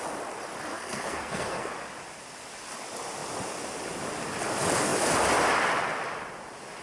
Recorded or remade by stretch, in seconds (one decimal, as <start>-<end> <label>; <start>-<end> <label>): 0.0-0.7 recorded; 0.7-1.7 remade; 1.7-6.8 recorded